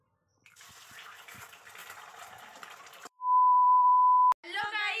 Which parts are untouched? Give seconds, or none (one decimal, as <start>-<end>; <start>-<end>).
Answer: 0.0-1.8; 3.9-5.0